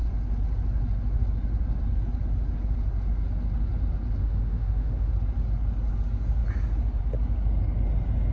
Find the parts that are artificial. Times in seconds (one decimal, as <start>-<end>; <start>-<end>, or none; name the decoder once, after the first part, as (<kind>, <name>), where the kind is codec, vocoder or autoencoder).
4.2-5.1 (autoencoder, DAC-VAE)